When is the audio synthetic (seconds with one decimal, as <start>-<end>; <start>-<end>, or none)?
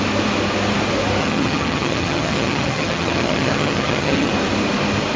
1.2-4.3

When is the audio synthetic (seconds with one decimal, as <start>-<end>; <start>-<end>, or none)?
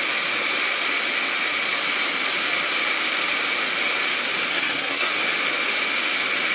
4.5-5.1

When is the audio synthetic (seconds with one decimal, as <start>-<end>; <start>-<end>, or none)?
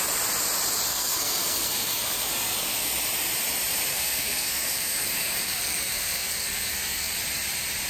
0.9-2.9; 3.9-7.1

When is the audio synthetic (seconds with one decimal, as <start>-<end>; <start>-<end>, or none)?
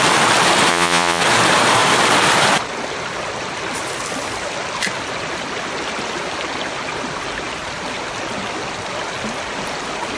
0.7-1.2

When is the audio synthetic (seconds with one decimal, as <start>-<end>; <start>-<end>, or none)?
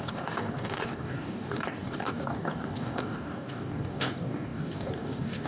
0.0-5.5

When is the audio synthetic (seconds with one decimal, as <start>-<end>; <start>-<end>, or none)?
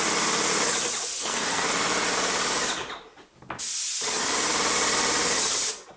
1.2-1.7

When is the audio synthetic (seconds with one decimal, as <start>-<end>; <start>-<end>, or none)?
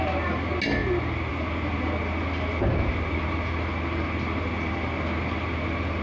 none